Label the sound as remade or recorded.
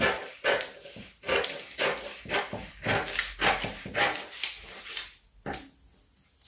recorded